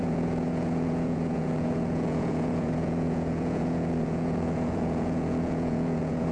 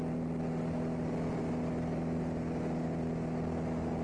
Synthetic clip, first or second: first